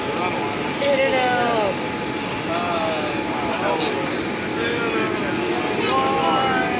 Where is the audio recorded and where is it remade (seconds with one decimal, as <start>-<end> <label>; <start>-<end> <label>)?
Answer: 0.0-6.8 recorded